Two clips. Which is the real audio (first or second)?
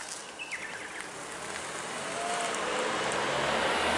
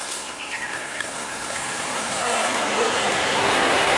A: first